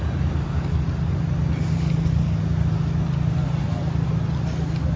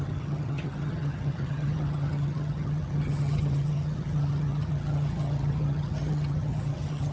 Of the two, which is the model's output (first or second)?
second